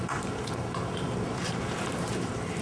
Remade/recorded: remade